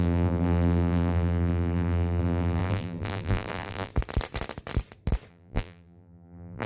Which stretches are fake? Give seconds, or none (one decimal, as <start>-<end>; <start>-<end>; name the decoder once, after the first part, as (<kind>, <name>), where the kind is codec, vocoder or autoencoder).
0.0-3.9 (vocoder, BigVGAN v2); 5.3-6.7